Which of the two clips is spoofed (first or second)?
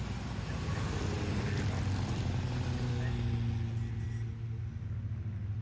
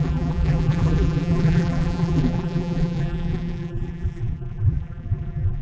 second